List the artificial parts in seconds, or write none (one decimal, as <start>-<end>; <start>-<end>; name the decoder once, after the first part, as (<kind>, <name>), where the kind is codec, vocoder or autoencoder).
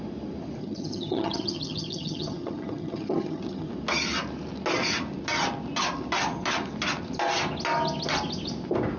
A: 0.6-3.7 (vocoder, HiFi-GAN)